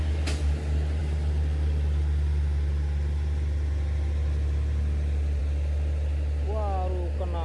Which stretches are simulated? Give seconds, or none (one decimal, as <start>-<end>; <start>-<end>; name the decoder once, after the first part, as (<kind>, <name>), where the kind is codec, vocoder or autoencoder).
none